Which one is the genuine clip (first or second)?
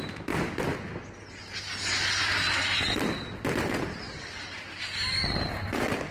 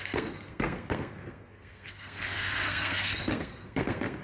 first